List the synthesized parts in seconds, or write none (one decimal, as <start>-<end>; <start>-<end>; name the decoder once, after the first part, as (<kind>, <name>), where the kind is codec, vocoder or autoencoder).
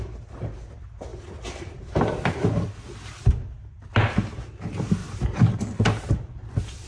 none